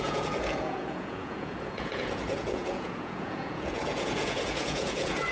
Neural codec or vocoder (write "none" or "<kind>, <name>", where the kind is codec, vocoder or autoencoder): vocoder, Vocos